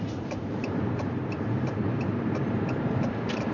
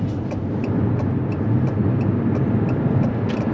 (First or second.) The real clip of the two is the second